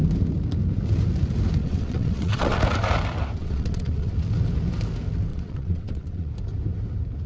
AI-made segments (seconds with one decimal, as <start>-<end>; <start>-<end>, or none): 1.6-2.6; 3.4-4.1; 5.3-6.3